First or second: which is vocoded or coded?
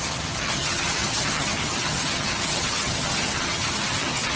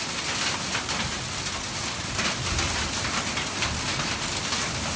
first